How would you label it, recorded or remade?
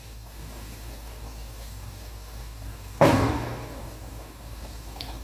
remade